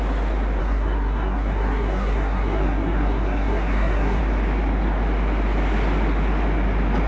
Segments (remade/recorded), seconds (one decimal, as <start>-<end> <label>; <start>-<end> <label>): 0.0-0.6 recorded; 0.6-4.2 remade; 4.2-7.1 recorded